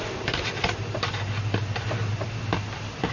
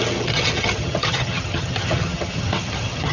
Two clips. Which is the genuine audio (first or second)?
first